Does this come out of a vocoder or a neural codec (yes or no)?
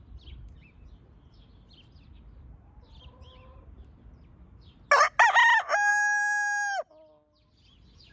no